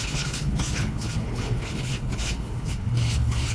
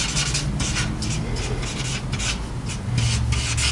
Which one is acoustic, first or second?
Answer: second